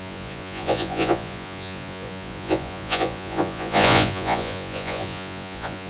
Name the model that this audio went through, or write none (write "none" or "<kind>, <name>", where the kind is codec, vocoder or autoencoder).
vocoder, Vocos